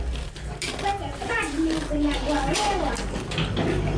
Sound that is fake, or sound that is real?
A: real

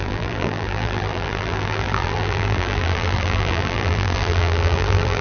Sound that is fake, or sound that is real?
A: fake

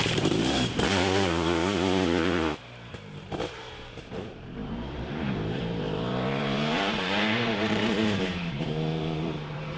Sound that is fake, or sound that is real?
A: fake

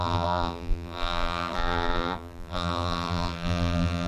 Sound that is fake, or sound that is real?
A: fake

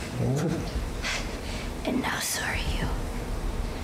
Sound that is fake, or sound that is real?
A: fake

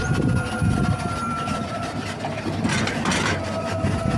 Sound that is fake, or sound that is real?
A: fake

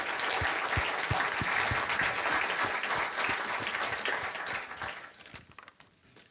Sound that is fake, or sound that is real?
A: real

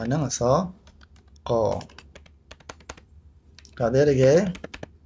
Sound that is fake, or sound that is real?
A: real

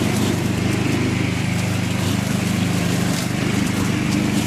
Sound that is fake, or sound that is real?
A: fake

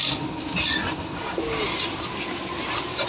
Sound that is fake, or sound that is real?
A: real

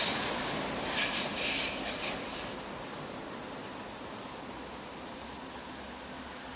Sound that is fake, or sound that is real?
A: real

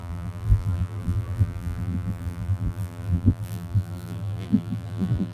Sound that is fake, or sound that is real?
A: fake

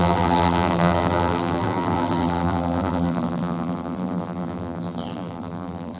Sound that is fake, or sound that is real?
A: fake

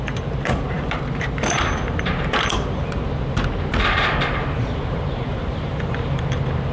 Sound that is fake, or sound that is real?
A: fake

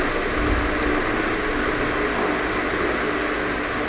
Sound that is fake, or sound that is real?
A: real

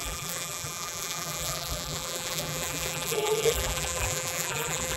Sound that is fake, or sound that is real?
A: fake